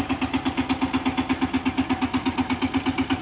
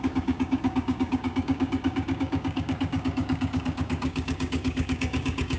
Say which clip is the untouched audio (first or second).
first